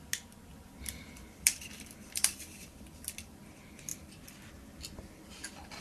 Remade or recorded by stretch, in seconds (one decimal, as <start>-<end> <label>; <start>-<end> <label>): 0.0-0.5 recorded; 0.5-3.5 remade; 3.5-3.9 recorded; 3.9-4.5 remade; 4.5-5.8 recorded